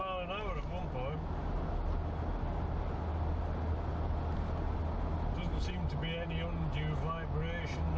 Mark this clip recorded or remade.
recorded